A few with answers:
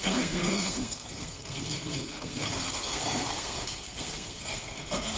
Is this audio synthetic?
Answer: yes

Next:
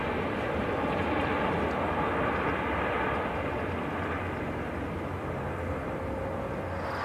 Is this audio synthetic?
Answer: no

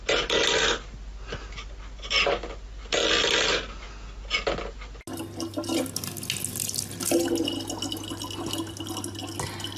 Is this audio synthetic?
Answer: no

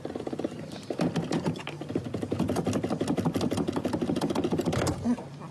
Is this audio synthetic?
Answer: no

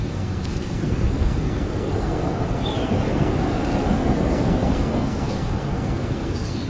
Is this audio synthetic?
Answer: yes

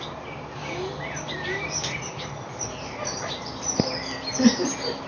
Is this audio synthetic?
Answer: no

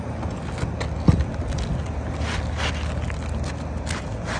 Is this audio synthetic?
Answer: no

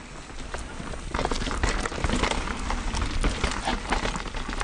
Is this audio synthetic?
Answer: no